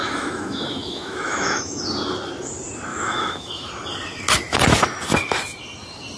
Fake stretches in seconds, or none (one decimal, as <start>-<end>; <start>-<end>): 0.0-1.8; 2.9-3.7